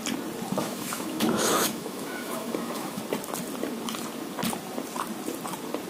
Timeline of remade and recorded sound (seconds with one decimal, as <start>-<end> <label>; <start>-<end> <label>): 0.0-0.6 recorded; 0.6-3.0 remade; 3.0-5.9 recorded